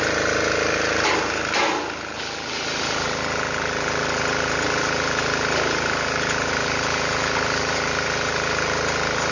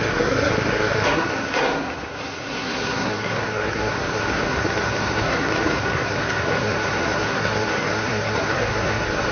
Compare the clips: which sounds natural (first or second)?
first